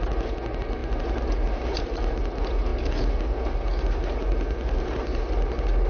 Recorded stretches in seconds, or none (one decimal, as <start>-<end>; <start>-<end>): 0.0-5.9